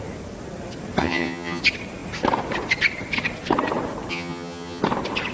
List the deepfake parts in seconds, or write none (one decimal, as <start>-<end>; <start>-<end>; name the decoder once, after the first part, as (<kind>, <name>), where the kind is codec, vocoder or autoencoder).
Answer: 1.0-1.6 (vocoder, HiFi-GAN); 4.1-4.8